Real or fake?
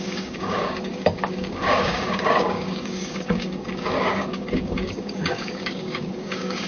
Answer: fake